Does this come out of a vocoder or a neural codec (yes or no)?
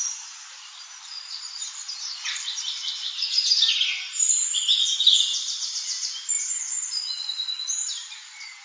yes